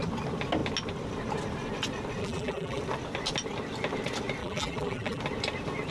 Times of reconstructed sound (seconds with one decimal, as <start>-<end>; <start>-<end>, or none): 2.2-2.8; 4.4-5.2